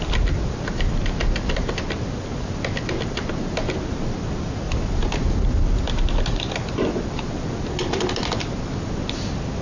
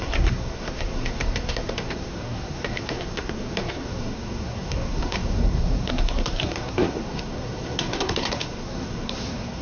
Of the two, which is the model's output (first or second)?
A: second